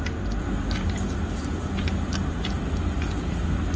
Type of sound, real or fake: real